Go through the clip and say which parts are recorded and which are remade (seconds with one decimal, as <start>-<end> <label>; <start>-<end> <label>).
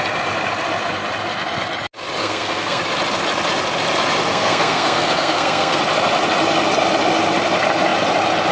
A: 0.0-2.2 recorded; 2.2-2.8 remade; 2.8-4.3 recorded; 4.3-5.8 remade; 5.8-8.5 recorded